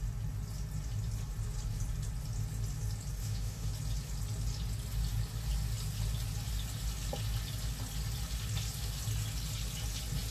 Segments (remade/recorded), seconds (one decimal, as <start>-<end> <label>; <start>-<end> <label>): 0.0-3.2 recorded; 3.2-3.7 remade; 3.7-10.3 recorded

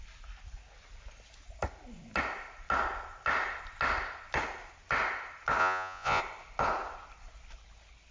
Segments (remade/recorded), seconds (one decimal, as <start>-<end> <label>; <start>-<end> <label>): 0.0-5.6 recorded; 5.6-6.2 remade; 6.2-8.1 recorded

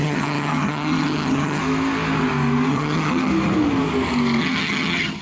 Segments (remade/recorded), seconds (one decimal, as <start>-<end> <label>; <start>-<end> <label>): 0.0-1.6 remade; 1.6-2.7 recorded; 2.7-3.3 remade; 3.3-4.4 recorded; 4.4-5.2 remade